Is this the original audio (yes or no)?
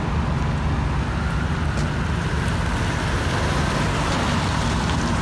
yes